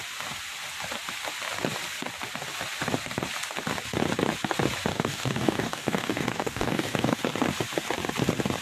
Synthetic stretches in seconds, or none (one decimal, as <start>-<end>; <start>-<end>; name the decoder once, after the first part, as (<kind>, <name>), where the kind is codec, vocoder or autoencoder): 4.9-7.2 (codec, DAC)